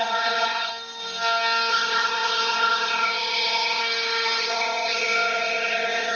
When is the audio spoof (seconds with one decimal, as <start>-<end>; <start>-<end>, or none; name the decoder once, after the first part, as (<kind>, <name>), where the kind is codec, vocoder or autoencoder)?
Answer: 0.0-0.7 (codec, ZipCodec); 1.7-3.8; 4.4-6.2